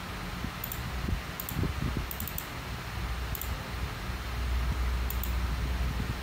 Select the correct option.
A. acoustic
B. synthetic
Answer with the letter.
A